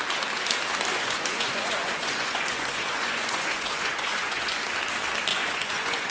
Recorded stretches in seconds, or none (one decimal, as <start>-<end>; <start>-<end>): 0.0-0.9; 4.6-5.3